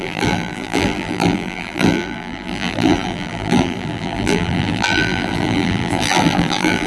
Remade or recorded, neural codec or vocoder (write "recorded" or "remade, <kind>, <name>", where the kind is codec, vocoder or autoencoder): remade, vocoder, BigVGAN v2